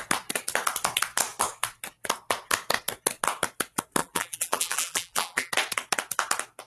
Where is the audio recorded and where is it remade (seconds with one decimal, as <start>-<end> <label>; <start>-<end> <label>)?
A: 0.0-4.0 recorded; 4.0-5.5 remade; 5.5-6.7 recorded